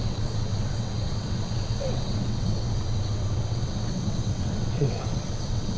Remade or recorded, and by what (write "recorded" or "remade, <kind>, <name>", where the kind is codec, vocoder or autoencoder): remade, vocoder, WaveNeXt